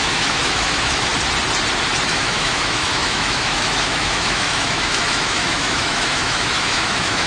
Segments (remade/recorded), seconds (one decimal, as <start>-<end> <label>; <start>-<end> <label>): 0.0-1.1 remade; 1.1-2.1 recorded; 2.1-7.3 remade